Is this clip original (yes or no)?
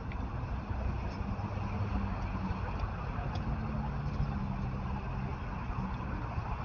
yes